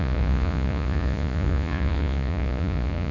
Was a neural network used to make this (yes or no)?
yes